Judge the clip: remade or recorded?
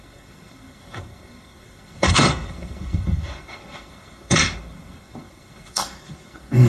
remade